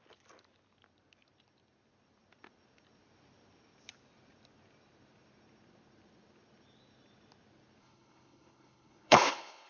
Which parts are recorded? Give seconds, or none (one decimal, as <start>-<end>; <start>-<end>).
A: 0.0-7.8